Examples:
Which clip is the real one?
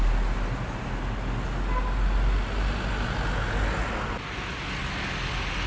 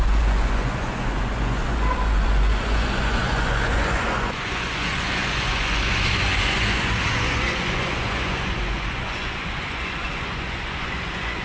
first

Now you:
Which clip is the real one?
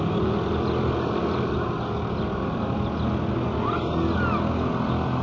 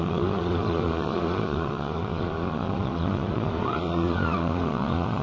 first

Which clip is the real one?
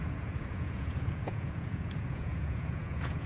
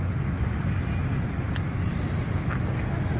second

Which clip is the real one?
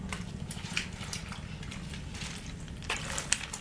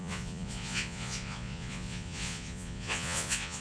first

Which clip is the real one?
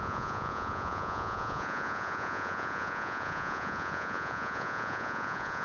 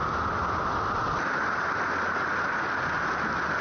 second